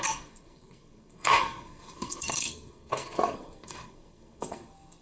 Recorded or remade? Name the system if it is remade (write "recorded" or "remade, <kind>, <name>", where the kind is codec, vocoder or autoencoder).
remade, codec, SNAC